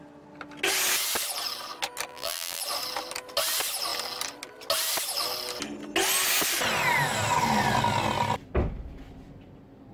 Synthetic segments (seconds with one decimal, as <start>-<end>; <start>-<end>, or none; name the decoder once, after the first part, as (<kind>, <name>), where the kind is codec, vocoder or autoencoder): 2.1-2.6 (vocoder, BigVGAN v2)